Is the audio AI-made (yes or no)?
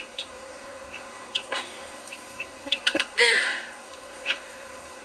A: yes